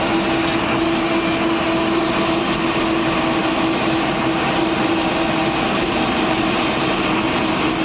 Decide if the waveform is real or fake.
real